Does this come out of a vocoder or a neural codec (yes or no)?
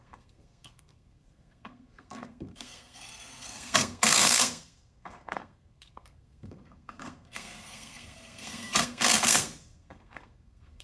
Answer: yes